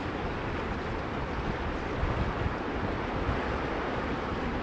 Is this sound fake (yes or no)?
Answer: no